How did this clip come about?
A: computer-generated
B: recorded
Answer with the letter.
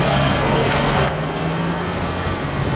A